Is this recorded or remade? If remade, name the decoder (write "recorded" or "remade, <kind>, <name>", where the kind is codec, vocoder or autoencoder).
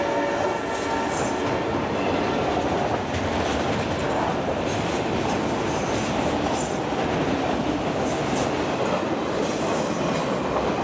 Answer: recorded